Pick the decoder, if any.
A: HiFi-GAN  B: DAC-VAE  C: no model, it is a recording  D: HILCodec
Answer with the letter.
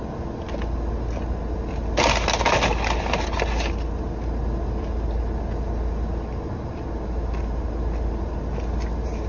C